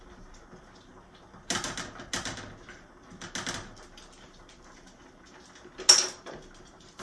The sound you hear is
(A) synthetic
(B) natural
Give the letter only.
B